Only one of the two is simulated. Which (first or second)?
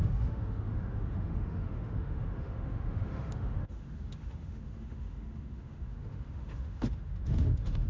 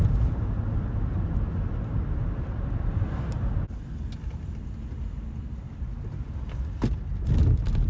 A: first